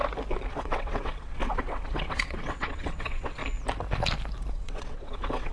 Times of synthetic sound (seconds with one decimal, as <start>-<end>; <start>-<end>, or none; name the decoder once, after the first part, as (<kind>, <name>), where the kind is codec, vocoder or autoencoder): 0.5-3.4 (vocoder, WaveNeXt); 4.5-5.5